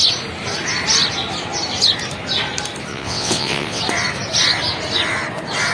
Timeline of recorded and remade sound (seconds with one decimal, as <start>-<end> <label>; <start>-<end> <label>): 0.0-2.9 recorded; 2.9-3.8 remade; 3.8-5.7 recorded